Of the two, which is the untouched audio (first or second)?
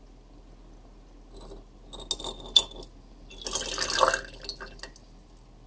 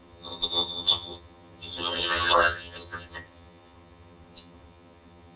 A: first